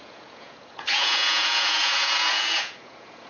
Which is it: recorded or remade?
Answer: remade